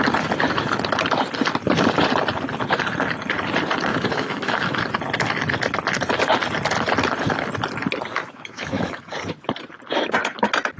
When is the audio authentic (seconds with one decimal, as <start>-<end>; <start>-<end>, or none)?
0.0-3.9; 4.8-8.1; 9.1-10.8